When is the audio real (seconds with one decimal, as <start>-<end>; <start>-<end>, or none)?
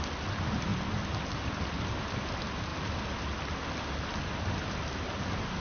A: 0.0-5.6